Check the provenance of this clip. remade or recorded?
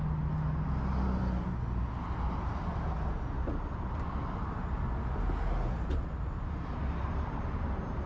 recorded